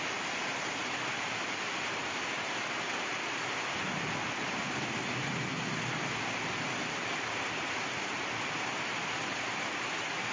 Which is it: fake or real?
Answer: real